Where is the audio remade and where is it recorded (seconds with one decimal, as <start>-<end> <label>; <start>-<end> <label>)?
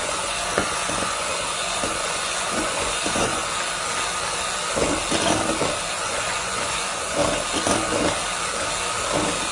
0.0-3.4 remade; 3.4-6.0 recorded; 6.0-7.2 remade; 7.2-9.5 recorded